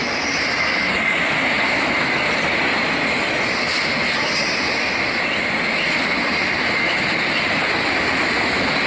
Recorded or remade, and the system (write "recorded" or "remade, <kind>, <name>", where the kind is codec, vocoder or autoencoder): recorded